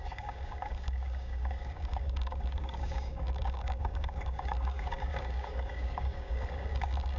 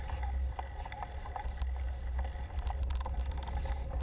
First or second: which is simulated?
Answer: first